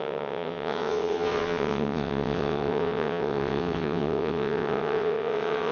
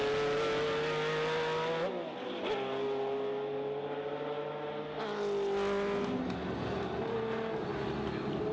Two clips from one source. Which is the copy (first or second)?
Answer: first